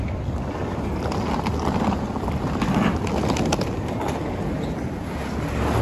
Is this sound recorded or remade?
recorded